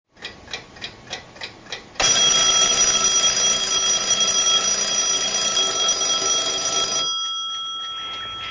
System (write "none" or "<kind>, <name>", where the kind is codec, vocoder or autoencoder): none